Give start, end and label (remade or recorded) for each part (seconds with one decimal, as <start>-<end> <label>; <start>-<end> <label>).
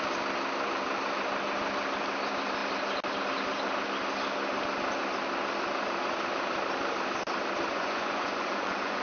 0.0-7.7 recorded; 7.7-9.0 remade